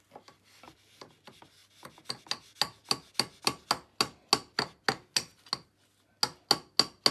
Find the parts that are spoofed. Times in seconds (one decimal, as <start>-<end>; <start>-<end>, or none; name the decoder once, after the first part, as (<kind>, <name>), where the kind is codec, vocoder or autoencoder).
none